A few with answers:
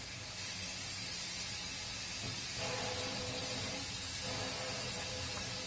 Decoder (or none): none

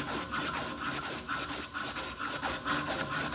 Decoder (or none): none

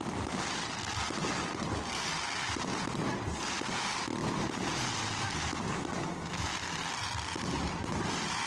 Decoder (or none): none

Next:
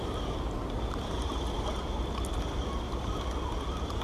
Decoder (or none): none